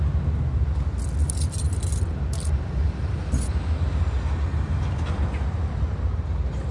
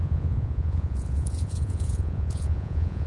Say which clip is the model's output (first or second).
second